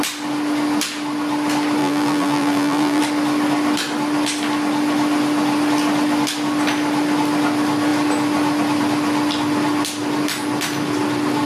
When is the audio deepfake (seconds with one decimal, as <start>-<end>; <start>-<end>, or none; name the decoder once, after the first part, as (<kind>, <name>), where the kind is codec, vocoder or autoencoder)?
1.8-3.0 (vocoder, BigVGAN v2)